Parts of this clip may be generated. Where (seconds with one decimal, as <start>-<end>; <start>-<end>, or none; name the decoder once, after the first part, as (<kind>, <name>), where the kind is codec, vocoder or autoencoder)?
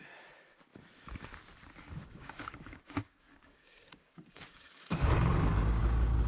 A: 2.0-5.8 (codec, DAC)